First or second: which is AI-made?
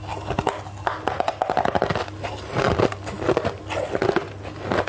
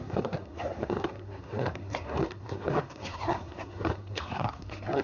second